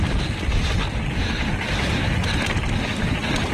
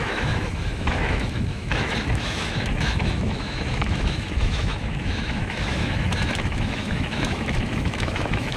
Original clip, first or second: first